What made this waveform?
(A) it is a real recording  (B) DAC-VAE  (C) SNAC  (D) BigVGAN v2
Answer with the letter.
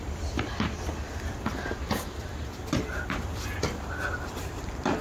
A